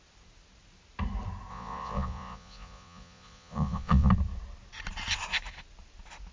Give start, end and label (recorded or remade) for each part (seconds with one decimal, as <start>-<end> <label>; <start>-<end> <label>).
0.0-1.5 recorded; 1.5-4.1 remade; 4.1-6.3 recorded